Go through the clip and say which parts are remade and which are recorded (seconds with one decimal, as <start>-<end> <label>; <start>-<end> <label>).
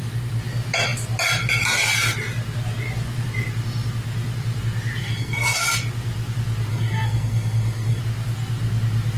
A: 0.0-5.0 recorded; 5.0-5.7 remade; 5.7-6.7 recorded; 6.7-8.0 remade; 8.0-9.2 recorded